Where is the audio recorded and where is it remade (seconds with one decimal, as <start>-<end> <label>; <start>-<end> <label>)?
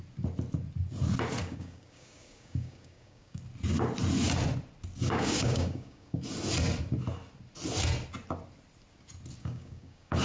0.0-1.4 recorded; 1.4-3.4 remade; 3.4-5.0 recorded; 5.0-6.2 remade; 6.2-9.4 recorded; 9.4-10.2 remade